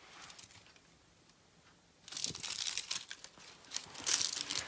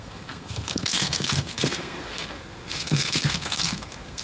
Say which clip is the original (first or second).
first